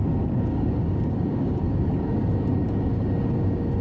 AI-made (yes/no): yes